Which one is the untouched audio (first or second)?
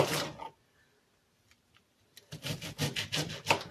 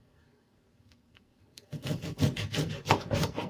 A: first